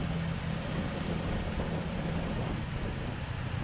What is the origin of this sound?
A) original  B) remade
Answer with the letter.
A